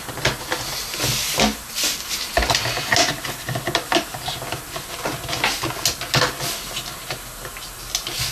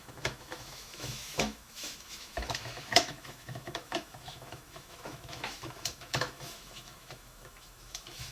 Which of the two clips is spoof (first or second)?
second